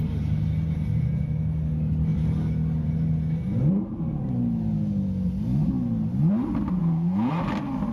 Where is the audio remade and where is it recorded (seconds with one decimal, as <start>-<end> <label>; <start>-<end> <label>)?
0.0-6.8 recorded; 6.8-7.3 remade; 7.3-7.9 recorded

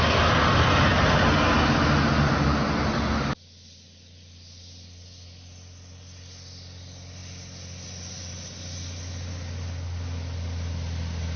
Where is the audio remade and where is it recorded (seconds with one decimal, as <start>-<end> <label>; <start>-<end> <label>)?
0.0-11.4 recorded

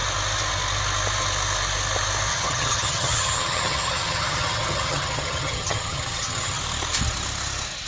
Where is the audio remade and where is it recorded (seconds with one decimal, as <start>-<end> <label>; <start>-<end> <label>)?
0.0-2.3 recorded; 2.3-6.6 remade; 6.6-7.9 recorded